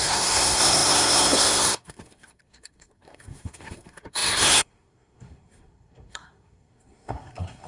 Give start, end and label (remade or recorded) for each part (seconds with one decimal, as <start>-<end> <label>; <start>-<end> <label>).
0.0-7.7 remade